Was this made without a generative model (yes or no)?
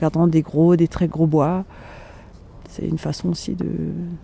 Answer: yes